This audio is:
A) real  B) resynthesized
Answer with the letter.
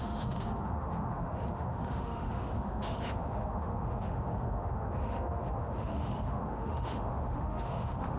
B